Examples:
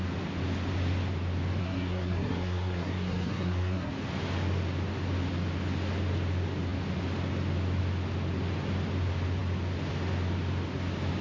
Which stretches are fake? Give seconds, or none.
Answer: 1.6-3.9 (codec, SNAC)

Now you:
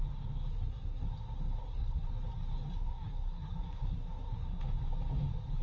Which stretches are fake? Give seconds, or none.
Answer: 0.5-1.1 (codec, SNAC); 1.6-2.1; 2.7-4.6

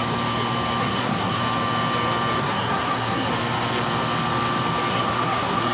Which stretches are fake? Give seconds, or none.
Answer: 0.8-1.4 (codec, SNAC); 2.4-3.3; 4.9-5.7

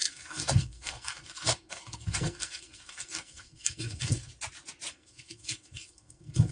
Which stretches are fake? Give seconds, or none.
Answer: 0.0-4.3 (codec, SNAC); 4.9-6.5

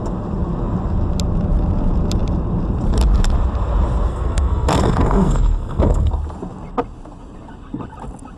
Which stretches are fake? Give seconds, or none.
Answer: 4.1-6.1 (codec, SNAC)

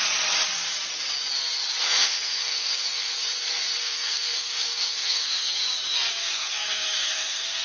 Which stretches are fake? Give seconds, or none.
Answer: 1.8-3.1 (codec, SNAC); 3.8-5.6; 6.2-7.6